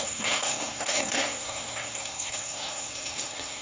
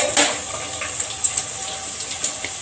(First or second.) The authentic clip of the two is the second